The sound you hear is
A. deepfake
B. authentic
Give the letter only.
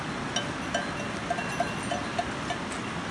B